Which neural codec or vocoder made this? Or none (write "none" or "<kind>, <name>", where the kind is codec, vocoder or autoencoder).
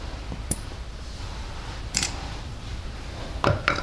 vocoder, BigVGAN v2